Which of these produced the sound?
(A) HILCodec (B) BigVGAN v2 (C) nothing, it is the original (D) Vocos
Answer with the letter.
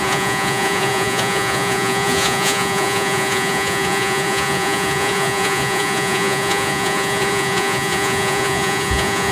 D